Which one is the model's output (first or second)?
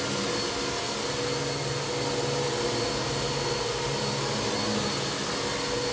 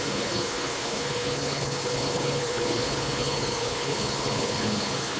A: second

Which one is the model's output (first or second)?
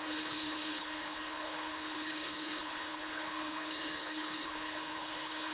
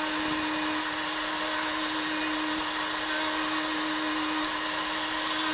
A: first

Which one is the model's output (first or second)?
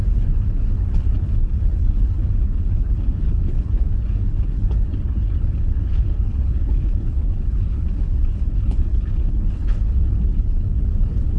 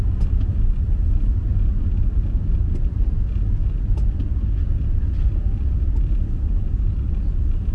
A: first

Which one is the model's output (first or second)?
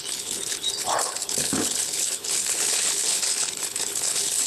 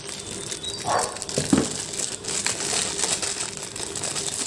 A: first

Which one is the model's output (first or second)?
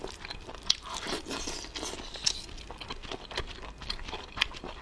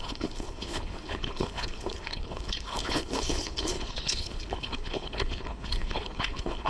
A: second